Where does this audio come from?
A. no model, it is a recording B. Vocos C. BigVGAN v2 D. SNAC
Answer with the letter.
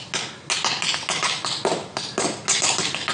A